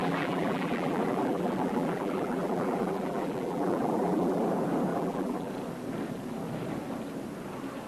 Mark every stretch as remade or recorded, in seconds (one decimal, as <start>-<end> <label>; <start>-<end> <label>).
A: 0.0-4.4 remade; 4.4-4.9 recorded; 4.9-5.5 remade; 5.5-7.9 recorded